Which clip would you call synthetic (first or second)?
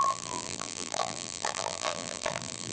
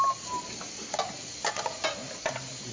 first